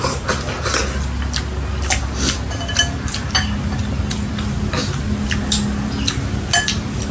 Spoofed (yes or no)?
no